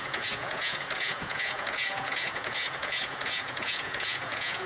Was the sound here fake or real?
fake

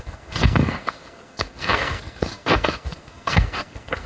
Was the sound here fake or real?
fake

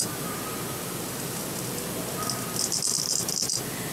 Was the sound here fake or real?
real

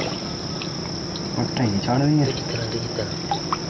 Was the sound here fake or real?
real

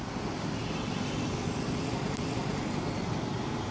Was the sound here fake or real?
real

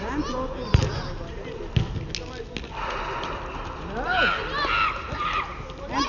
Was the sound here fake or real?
real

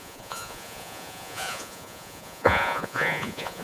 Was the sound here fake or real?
fake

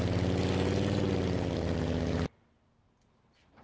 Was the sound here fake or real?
real